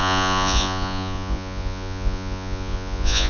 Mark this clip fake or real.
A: fake